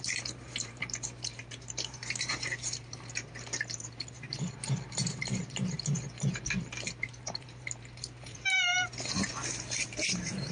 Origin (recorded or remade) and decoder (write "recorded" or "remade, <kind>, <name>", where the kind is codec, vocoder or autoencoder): remade, vocoder, BigVGAN v2